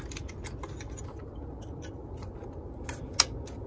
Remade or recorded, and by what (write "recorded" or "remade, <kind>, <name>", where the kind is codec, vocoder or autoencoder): recorded